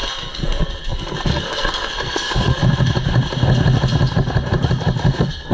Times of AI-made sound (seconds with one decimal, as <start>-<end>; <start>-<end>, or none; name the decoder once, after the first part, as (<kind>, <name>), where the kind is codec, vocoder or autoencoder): 0.0-2.6 (codec, SNAC); 5.1-5.5